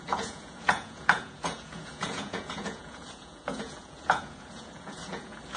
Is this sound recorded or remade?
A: remade